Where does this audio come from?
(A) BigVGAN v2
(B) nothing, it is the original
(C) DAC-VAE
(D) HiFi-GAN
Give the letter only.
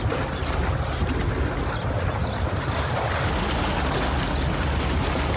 B